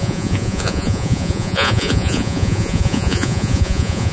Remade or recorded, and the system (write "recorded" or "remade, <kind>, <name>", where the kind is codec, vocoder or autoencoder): remade, vocoder, Vocos